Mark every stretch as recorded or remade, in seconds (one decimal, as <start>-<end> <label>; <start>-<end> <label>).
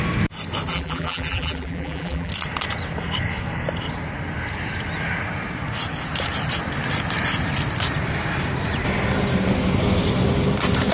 0.0-0.7 recorded; 0.7-2.3 remade; 2.3-10.9 recorded